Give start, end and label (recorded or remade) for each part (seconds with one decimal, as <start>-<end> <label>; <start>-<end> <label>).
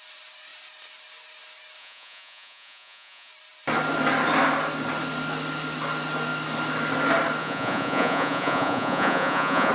0.0-1.8 recorded; 1.8-3.3 remade; 3.3-7.4 recorded; 7.4-9.7 remade